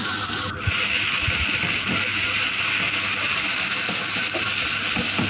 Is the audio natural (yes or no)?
yes